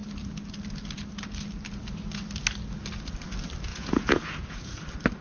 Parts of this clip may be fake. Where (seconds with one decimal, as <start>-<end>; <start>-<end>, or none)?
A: 3.7-4.8